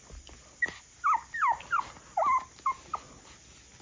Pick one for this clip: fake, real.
real